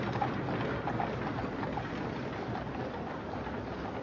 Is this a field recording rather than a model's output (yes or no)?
yes